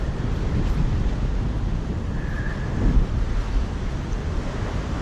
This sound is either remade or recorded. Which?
recorded